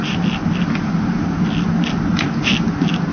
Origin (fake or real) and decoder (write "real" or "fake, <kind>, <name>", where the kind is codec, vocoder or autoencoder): real